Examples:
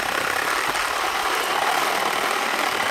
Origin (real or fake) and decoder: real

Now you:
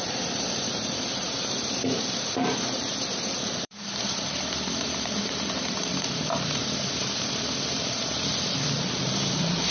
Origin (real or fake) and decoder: fake, vocoder, BigVGAN v2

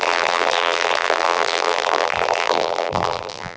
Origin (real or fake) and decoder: fake, vocoder, BigVGAN v2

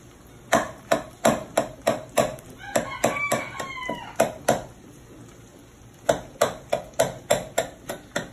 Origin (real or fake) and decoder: real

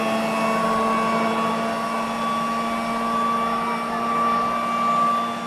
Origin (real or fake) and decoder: real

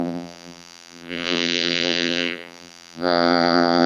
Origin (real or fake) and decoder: fake, vocoder, BigVGAN v2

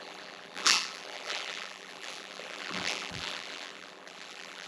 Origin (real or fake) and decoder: fake, vocoder, BigVGAN v2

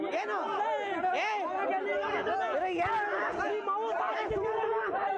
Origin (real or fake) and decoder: real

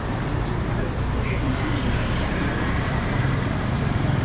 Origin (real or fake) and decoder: fake, vocoder, BigVGAN v2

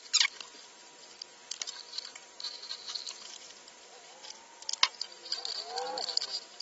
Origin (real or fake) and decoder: real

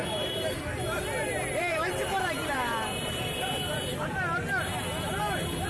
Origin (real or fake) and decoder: real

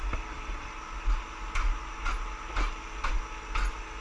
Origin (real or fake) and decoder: real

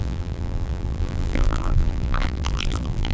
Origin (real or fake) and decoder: fake, vocoder, BigVGAN v2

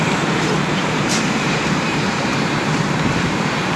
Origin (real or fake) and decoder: fake, vocoder, BigVGAN v2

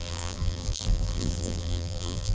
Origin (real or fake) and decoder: fake, vocoder, BigVGAN v2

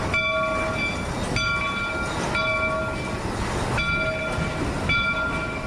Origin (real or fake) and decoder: real